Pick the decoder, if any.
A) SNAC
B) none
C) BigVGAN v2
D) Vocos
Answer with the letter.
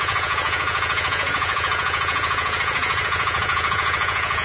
D